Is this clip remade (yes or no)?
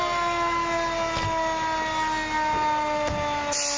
no